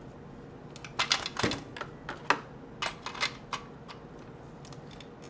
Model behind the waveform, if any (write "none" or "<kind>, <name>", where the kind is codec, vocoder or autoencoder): none